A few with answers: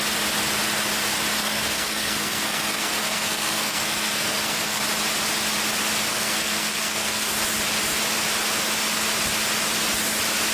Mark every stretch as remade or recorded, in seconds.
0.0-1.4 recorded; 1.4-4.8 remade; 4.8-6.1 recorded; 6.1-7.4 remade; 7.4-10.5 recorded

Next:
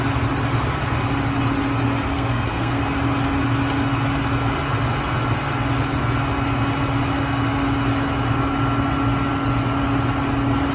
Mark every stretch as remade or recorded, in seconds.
0.0-2.1 recorded; 2.1-2.8 remade; 2.8-10.7 recorded

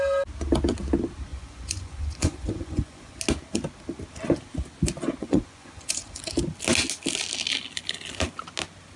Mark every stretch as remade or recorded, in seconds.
0.0-1.3 recorded; 1.3-3.2 remade; 3.2-5.2 recorded; 5.2-6.2 remade; 6.2-9.0 recorded

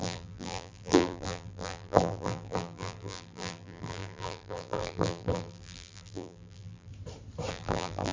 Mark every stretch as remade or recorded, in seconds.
0.0-6.9 remade; 6.9-7.5 recorded; 7.5-8.1 remade